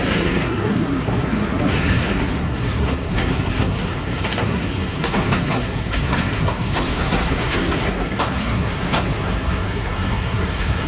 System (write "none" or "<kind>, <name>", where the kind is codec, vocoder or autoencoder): codec, SNAC